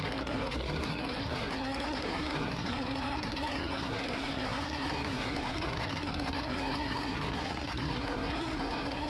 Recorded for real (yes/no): no